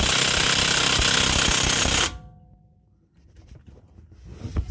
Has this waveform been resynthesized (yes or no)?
no